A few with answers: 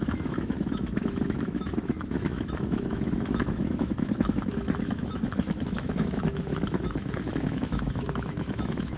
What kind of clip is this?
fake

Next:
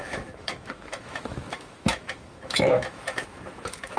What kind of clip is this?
fake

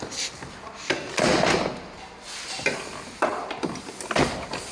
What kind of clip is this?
real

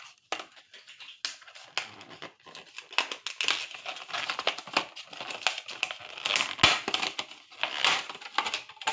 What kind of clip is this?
real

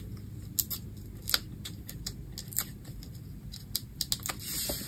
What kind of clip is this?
real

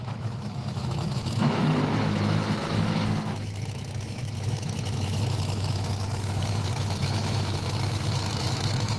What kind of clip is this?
fake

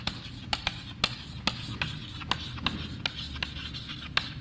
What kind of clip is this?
real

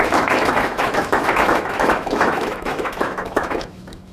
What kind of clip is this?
fake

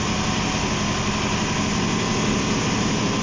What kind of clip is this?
real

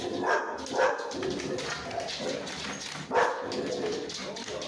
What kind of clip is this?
real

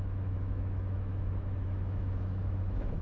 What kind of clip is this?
fake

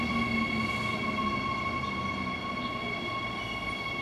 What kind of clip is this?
real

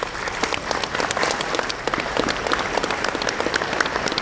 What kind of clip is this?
real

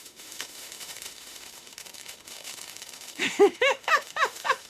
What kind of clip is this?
fake